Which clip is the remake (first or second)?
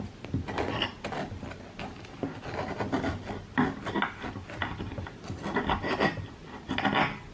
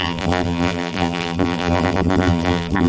second